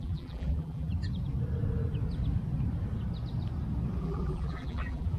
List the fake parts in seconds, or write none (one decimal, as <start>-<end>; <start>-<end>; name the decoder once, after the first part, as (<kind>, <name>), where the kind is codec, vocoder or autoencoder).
0.0-0.9 (vocoder, BigVGAN v2); 4.0-5.2